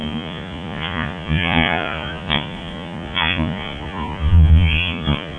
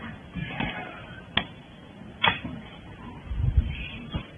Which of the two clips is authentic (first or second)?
second